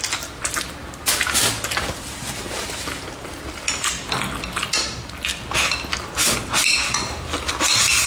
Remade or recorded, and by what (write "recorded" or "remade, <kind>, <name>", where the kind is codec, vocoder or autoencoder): recorded